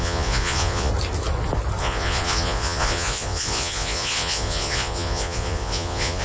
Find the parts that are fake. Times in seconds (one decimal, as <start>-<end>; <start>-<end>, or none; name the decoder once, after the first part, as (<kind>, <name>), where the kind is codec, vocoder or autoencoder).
0.0-0.9 (vocoder, Vocos); 1.8-6.2